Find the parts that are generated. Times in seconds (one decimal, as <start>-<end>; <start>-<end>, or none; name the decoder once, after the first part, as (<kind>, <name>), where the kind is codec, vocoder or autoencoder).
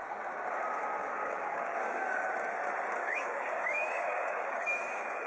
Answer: 1.0-2.3 (codec, DAC); 3.0-5.3